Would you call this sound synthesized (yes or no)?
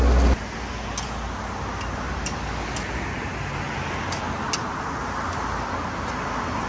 no